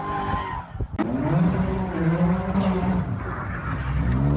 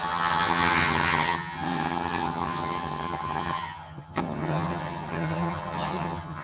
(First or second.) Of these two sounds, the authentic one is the first